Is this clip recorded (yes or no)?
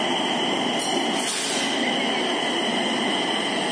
yes